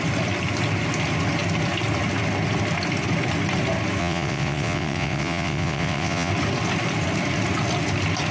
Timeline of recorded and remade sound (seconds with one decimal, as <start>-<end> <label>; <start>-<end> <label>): 0.0-4.0 recorded; 4.0-6.3 remade; 6.3-8.3 recorded